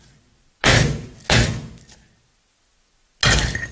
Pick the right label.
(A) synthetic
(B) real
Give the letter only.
B